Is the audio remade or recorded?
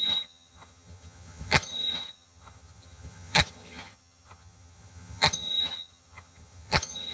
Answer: remade